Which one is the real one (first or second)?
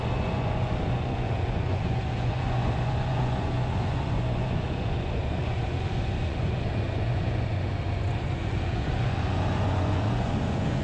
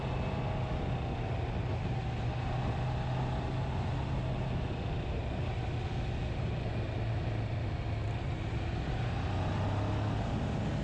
second